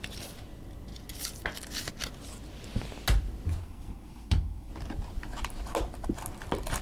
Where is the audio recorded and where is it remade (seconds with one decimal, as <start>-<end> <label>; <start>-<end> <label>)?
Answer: 0.0-3.6 recorded; 3.6-4.7 remade; 4.7-6.8 recorded